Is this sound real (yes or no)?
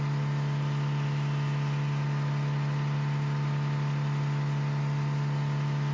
yes